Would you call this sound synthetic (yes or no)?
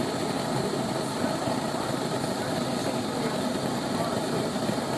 no